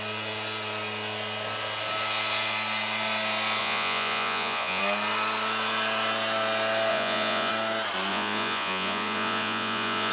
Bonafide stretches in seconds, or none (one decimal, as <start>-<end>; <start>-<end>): 0.0-3.6; 4.8-6.9; 7.5-8.1